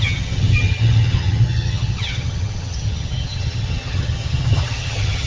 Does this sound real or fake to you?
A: fake